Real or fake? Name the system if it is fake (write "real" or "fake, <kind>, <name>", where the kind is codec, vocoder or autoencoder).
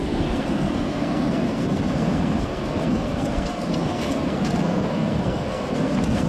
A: fake, codec, SNAC